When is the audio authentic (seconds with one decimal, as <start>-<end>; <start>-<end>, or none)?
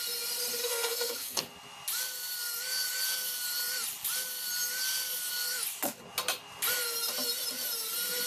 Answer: 0.0-0.6; 1.4-8.3